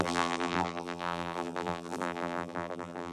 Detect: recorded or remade remade